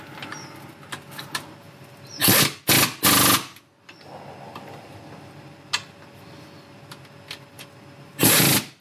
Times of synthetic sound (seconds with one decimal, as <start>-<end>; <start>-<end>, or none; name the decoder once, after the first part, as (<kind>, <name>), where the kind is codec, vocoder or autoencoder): none